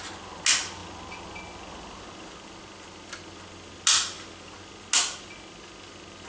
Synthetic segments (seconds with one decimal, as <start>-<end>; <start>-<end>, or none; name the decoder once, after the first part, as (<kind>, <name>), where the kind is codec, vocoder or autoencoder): none